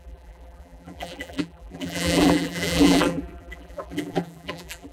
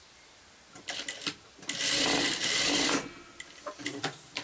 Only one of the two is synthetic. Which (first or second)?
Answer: first